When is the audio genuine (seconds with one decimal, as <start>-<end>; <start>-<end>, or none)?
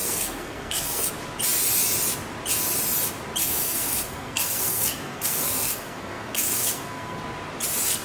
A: 1.1-3.4; 7.2-8.0